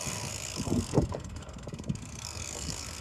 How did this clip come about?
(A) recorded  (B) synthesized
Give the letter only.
B